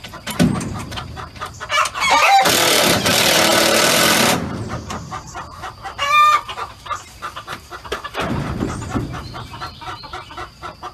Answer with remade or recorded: remade